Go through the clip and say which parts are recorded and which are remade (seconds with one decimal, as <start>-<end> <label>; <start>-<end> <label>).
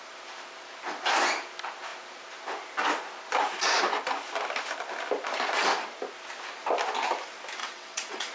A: 0.0-7.6 recorded; 7.6-8.3 remade